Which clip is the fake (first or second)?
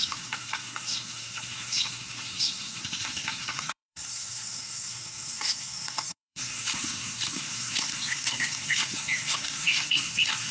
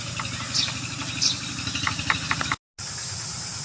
first